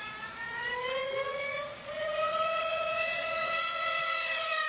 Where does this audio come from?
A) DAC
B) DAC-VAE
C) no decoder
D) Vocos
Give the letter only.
D